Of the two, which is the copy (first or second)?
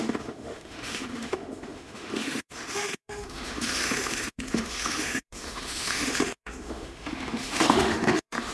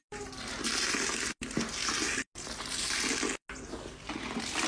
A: first